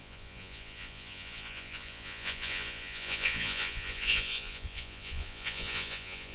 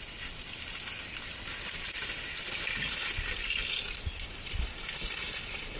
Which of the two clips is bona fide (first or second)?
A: second